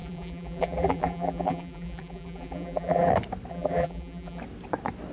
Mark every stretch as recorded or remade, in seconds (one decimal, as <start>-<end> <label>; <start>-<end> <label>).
0.0-3.1 remade; 3.1-3.5 recorded; 3.5-4.4 remade; 4.4-5.1 recorded